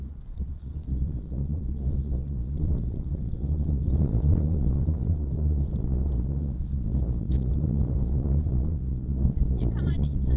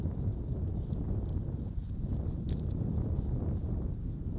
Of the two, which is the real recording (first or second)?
second